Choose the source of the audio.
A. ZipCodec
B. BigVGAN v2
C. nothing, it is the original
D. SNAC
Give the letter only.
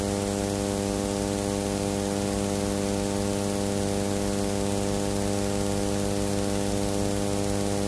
C